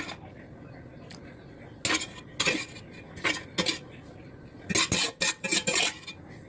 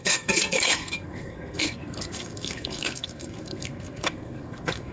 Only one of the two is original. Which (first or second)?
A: first